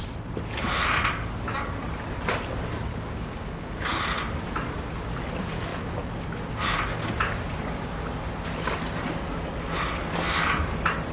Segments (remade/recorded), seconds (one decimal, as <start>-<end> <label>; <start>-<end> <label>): 0.0-2.9 recorded; 2.9-4.0 remade; 4.0-11.1 recorded